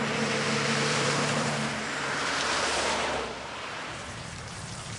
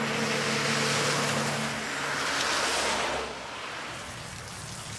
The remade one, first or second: first